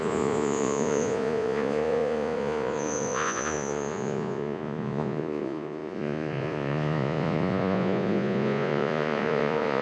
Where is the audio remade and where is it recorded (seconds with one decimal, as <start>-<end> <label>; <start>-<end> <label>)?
0.0-9.8 remade